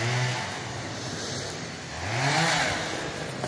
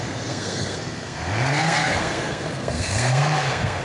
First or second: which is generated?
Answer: second